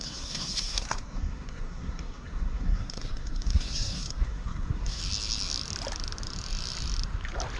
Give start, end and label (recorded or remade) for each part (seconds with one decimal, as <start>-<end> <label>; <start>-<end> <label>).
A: 0.0-5.0 remade; 5.0-7.6 recorded